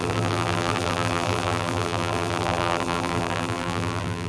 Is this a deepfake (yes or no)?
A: yes